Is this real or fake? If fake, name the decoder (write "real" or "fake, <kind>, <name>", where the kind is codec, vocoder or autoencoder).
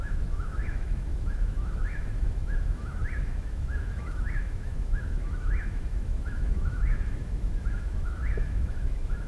fake, autoencoder, DAC-VAE